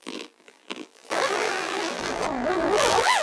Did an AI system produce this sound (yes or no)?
yes